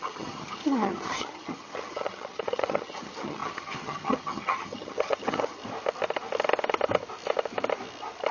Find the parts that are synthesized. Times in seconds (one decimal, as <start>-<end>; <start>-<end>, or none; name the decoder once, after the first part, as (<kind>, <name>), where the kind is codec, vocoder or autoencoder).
0.0-5.6 (vocoder, HiFi-GAN)